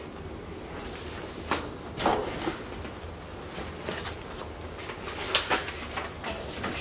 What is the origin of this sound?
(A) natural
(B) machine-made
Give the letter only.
A